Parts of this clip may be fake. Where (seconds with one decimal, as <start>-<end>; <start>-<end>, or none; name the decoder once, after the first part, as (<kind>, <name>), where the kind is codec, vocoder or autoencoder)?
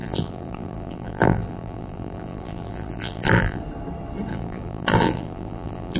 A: 0.0-3.6 (vocoder, BigVGAN v2); 4.3-6.0